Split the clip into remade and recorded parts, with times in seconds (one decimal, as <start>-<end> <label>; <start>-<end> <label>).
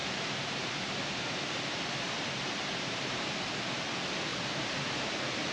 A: 0.0-3.3 remade; 3.3-4.3 recorded; 4.3-5.0 remade; 5.0-5.5 recorded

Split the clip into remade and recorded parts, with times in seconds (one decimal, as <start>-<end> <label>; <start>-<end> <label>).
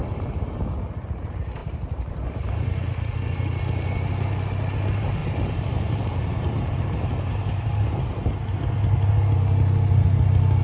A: 0.0-0.6 remade; 0.6-1.6 recorded; 1.6-3.1 remade; 3.1-5.2 recorded; 5.2-8.0 remade; 8.0-10.6 recorded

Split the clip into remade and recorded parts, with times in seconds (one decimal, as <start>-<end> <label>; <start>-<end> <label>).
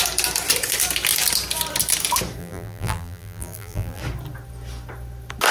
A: 0.0-2.4 recorded; 2.4-4.0 remade; 4.0-5.5 recorded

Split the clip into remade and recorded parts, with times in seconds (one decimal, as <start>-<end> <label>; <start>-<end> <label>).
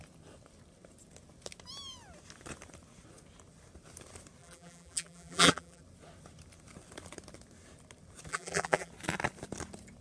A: 0.0-4.4 recorded; 4.4-5.8 remade; 5.8-8.3 recorded; 8.3-8.9 remade; 8.9-10.0 recorded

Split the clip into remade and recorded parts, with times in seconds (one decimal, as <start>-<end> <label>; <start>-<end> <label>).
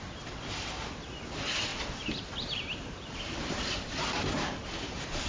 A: 0.0-1.7 recorded; 1.7-5.3 remade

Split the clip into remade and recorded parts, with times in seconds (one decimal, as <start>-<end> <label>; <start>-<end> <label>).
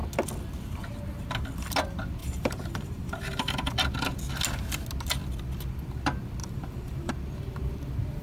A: 0.0-2.2 recorded; 2.2-3.7 remade; 3.7-6.4 recorded; 6.4-7.1 remade; 7.1-8.2 recorded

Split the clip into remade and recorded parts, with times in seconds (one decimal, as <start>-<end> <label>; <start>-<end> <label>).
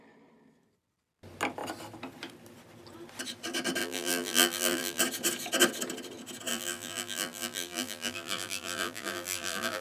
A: 0.0-3.8 recorded; 3.8-5.0 remade; 5.0-6.5 recorded; 6.5-9.8 remade